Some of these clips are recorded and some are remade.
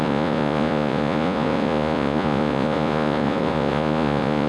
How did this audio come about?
remade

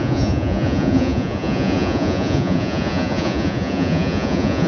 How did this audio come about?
remade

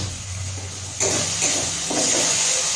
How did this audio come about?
remade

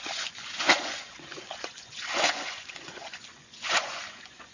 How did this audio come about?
remade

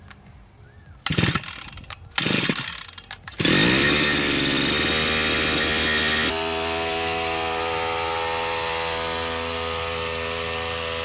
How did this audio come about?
recorded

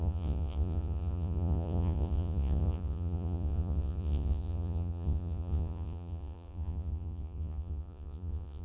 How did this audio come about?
remade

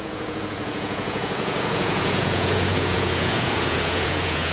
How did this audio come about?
remade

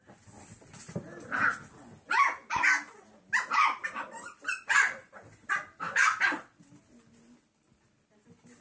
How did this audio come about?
recorded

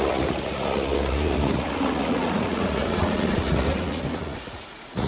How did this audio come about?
remade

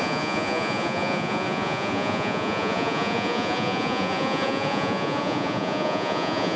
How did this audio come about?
remade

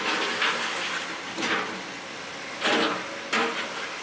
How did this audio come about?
recorded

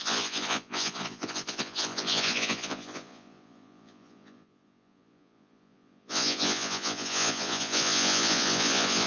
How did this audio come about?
remade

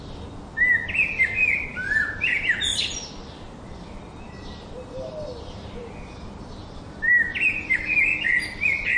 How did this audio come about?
recorded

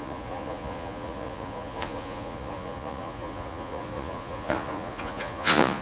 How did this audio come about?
remade